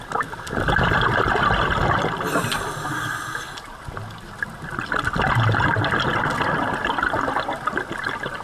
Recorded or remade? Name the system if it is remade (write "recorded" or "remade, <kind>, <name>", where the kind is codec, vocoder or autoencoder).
recorded